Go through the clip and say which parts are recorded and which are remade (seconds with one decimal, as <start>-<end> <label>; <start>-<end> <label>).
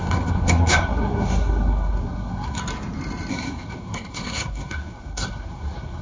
0.0-2.6 remade; 2.6-3.3 recorded; 3.3-6.0 remade